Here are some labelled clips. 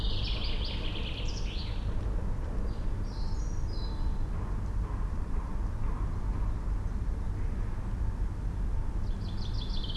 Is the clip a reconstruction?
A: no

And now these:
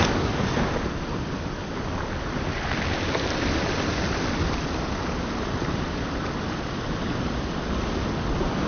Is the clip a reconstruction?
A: no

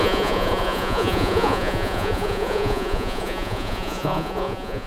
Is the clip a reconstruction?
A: yes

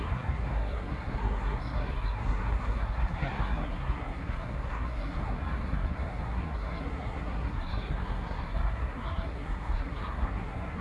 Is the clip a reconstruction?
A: yes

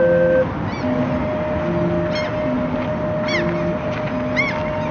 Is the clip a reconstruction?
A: no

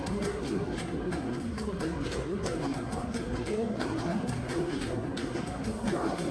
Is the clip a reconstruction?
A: yes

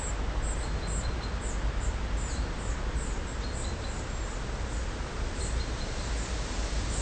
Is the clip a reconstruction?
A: no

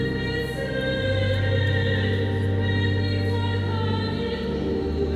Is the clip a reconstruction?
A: no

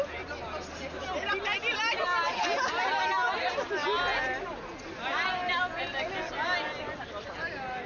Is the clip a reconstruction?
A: no